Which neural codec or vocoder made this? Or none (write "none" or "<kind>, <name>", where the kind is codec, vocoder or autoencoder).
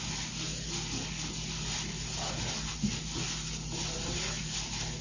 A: none